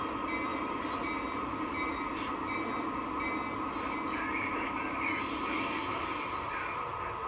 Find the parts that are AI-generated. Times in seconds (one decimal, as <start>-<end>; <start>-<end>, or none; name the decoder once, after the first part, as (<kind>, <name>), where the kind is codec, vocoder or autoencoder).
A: 0.5-2.9 (vocoder, BigVGAN v2)